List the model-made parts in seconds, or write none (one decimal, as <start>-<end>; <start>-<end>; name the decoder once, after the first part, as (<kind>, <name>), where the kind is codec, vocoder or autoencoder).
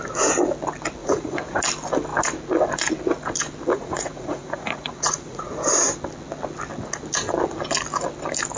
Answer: 1.0-1.6 (vocoder, Vocos); 3.7-5.5